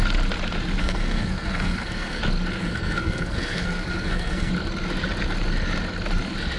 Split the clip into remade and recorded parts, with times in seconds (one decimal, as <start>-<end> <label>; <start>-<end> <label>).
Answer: 0.0-0.8 recorded; 0.8-2.2 remade; 2.2-2.6 recorded; 2.6-4.5 remade; 4.5-6.6 recorded